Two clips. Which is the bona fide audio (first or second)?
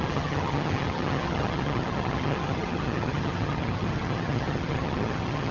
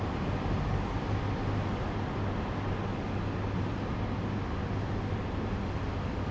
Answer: second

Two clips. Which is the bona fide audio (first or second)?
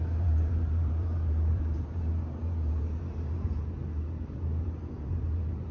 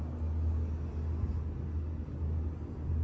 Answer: second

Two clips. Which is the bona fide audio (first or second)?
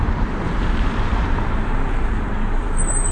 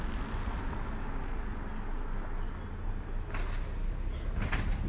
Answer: second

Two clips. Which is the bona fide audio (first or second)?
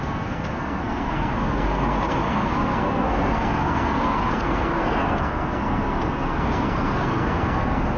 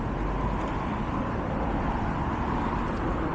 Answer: second